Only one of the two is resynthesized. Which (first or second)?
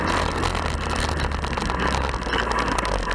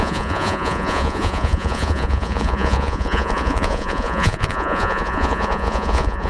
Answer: second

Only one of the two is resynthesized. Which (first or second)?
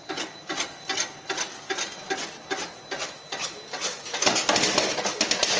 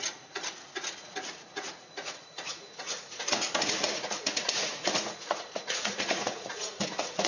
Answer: second